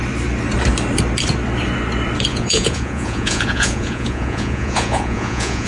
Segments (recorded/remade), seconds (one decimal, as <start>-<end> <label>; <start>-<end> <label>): 0.0-2.3 recorded; 2.3-5.7 remade